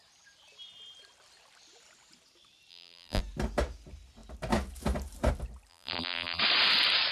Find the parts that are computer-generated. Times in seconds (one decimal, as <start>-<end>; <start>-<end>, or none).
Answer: 2.7-3.2; 5.7-6.4